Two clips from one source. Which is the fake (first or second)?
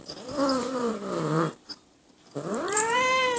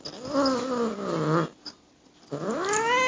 first